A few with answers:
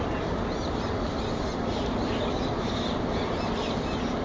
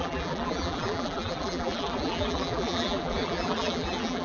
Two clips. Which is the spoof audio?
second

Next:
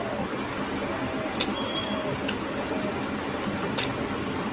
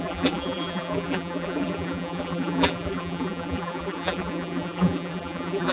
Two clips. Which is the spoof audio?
second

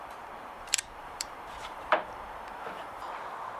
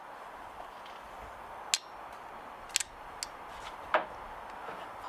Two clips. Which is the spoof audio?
first